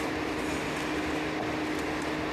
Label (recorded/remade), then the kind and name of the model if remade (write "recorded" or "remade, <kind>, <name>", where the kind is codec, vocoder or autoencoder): recorded